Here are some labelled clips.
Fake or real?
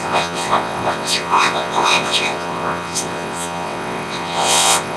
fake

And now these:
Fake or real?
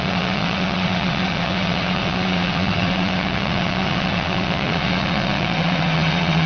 fake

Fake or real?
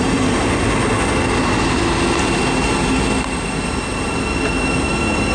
real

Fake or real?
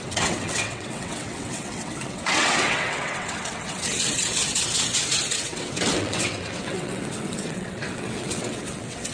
fake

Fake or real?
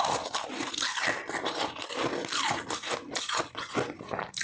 real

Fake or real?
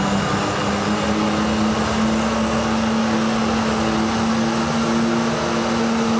real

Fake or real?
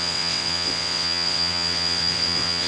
fake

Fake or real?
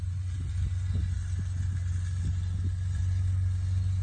real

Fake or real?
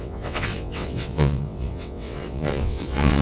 fake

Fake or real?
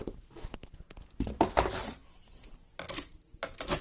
real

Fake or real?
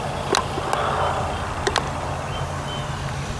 real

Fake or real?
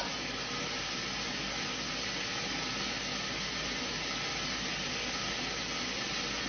real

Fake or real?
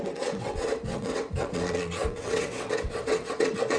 fake